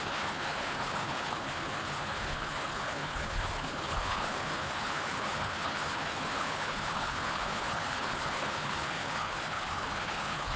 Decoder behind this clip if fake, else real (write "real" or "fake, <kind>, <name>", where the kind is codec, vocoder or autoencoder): fake, codec, HILCodec